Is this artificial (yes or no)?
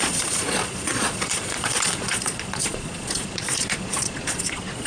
yes